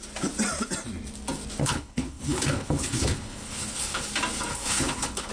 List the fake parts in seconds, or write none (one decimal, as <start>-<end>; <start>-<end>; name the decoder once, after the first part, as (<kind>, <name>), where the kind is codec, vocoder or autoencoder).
1.6-4.1 (codec, HILCodec); 4.5-5.3